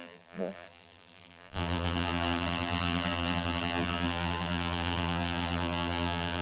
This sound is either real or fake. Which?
fake